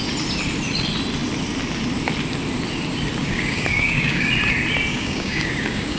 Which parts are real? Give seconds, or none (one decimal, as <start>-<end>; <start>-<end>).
0.0-3.2; 4.3-4.9